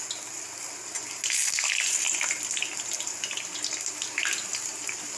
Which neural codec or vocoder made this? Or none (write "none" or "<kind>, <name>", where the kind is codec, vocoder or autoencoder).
none